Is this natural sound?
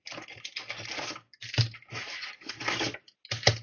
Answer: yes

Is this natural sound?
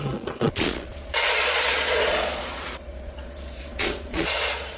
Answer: no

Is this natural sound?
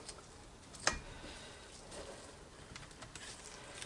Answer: yes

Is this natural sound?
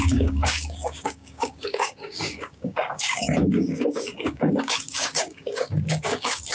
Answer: no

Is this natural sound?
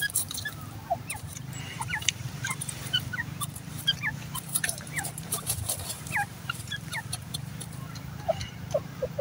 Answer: no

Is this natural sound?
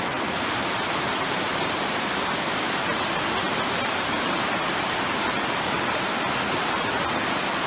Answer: no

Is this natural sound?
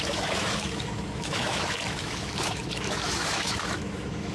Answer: no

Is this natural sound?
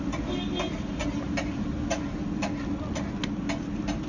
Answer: yes